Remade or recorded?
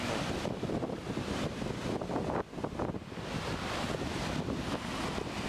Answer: recorded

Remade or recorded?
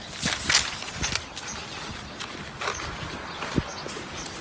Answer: recorded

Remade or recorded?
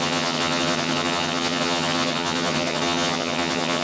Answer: remade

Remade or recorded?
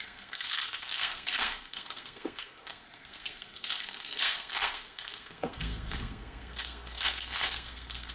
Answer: remade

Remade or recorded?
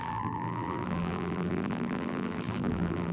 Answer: remade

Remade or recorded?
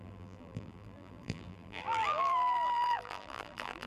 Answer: remade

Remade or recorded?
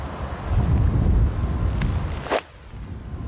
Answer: recorded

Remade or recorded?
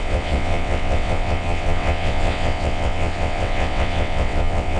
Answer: remade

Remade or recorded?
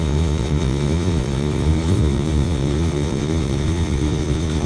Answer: remade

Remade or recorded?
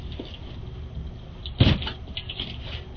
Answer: recorded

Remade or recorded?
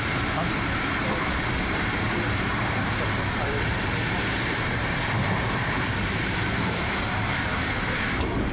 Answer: remade